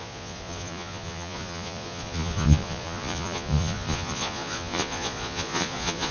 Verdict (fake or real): fake